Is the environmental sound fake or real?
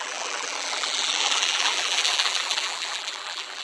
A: fake